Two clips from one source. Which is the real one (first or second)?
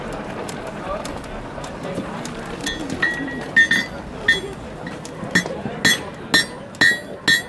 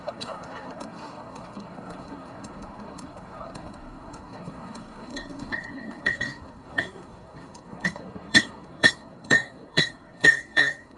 first